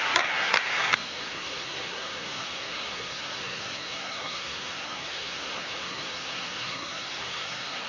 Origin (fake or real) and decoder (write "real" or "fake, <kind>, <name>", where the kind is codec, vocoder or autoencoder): fake, codec, SNAC